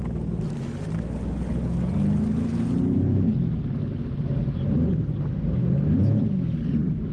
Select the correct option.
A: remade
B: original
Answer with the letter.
B